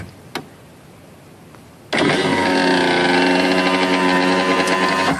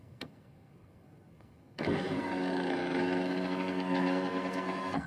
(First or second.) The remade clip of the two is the second